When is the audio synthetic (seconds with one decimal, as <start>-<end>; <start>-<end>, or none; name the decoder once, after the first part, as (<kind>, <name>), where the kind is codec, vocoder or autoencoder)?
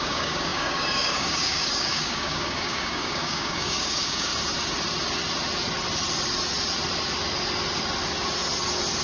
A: 0.0-4.3 (codec, DAC)